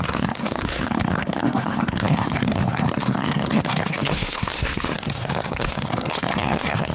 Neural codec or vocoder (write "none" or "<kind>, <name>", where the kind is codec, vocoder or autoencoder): codec, SNAC